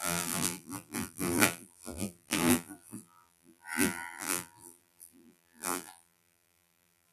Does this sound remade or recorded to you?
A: remade